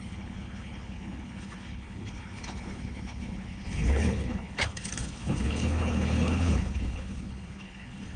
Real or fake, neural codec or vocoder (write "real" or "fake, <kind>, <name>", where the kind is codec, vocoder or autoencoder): fake, codec, HILCodec